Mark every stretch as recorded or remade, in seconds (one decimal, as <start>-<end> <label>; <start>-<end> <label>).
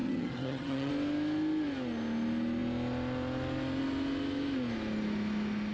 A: 0.0-0.9 remade; 0.9-5.7 recorded